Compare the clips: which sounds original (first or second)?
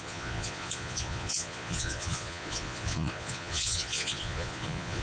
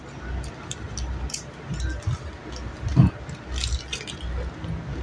second